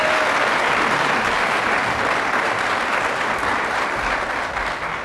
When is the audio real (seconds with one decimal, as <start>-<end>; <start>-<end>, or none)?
0.0-5.0

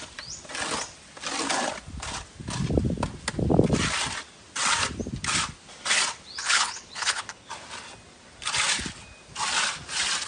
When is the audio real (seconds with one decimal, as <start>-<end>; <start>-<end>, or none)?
0.0-6.4; 7.5-10.3